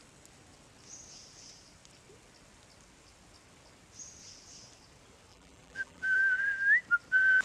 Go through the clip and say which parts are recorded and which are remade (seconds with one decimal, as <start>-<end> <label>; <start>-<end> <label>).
0.0-5.3 recorded; 5.3-6.2 remade; 6.2-7.4 recorded